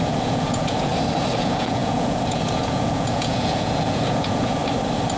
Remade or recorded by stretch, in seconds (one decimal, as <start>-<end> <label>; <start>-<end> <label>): 0.0-0.9 remade; 0.9-1.4 recorded; 1.4-4.6 remade; 4.6-5.2 recorded